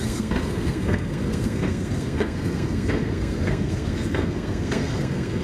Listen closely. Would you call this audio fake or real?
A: fake